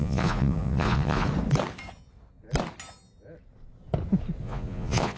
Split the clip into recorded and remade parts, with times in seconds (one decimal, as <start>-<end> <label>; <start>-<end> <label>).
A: 0.0-1.3 remade; 1.3-4.4 recorded; 4.4-5.2 remade